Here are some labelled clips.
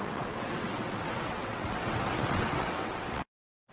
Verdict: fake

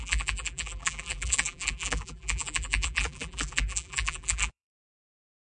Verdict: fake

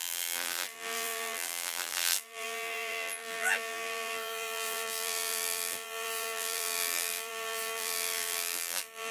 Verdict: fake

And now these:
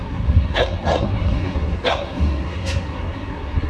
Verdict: fake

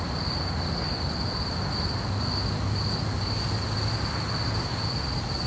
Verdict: real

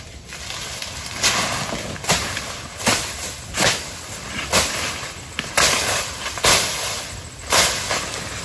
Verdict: real